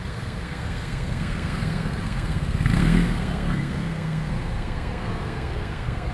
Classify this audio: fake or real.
fake